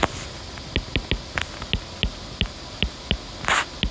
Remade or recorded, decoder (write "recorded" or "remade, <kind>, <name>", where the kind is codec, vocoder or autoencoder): recorded